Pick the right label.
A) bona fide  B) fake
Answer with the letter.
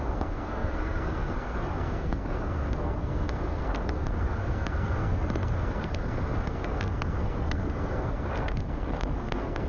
B